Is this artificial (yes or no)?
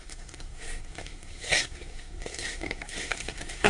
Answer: yes